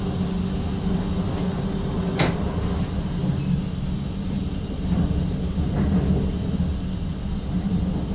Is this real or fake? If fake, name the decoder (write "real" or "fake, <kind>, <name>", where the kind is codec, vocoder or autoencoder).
real